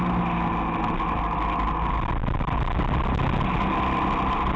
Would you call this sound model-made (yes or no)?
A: no